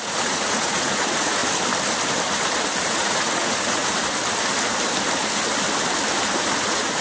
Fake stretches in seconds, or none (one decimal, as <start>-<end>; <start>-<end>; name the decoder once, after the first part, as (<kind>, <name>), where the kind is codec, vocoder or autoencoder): 0.0-1.4 (vocoder, Vocos); 2.8-3.8; 6.6-7.0